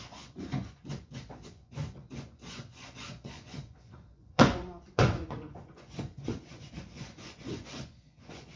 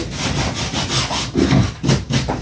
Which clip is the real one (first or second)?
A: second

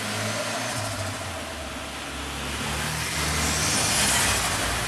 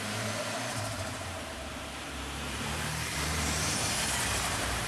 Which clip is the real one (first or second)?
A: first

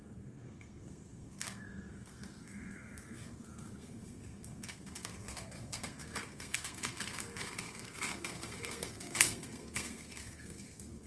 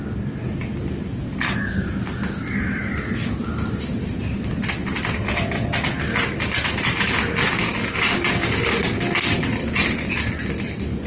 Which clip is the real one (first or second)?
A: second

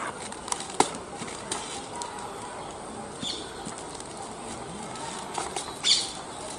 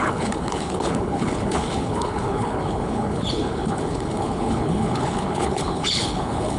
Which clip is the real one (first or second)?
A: first